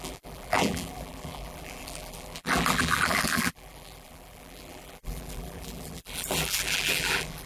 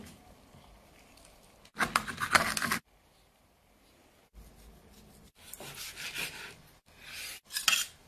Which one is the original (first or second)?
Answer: second